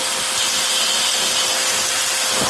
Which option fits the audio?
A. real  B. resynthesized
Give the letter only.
A